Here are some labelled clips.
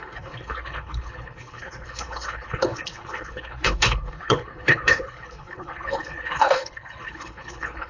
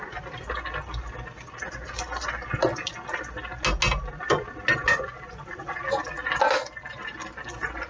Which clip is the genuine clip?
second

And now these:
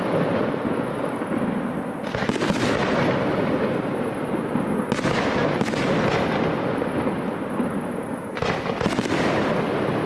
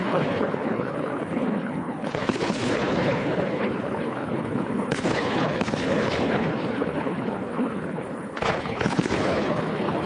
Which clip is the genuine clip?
first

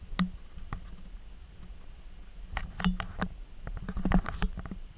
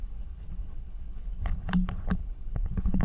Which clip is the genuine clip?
first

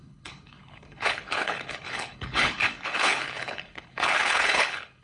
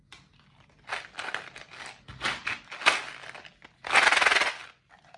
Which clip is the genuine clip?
second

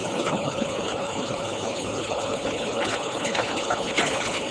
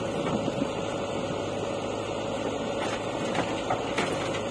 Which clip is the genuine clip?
second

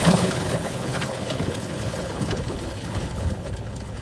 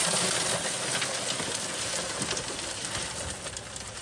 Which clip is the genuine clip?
second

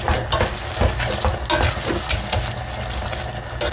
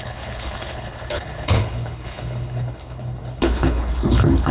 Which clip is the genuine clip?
first